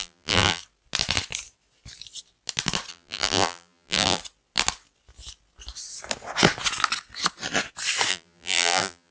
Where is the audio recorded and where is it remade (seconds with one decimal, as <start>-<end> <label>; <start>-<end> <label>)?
0.0-0.6 remade; 0.6-2.9 recorded; 2.9-4.2 remade; 4.2-8.1 recorded; 8.1-9.1 remade